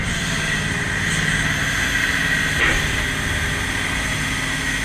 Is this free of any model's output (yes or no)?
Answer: yes